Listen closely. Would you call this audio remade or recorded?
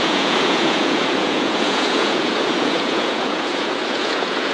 remade